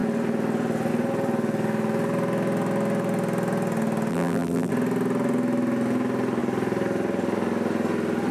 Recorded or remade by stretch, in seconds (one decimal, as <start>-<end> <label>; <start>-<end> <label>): 0.0-4.1 recorded; 4.1-4.7 remade; 4.7-8.3 recorded